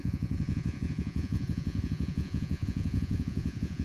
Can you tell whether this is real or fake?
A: fake